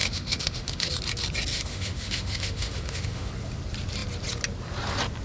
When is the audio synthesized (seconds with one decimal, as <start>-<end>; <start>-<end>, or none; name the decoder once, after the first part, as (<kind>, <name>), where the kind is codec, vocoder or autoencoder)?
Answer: 0.0-0.9 (autoencoder, DAC-VAE); 1.5-3.3